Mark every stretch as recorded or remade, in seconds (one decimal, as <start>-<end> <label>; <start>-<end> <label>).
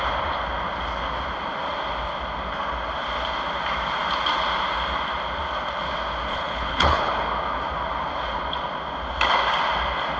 0.0-6.3 recorded; 6.3-7.1 remade; 7.1-10.2 recorded